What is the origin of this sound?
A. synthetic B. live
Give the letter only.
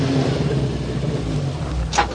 B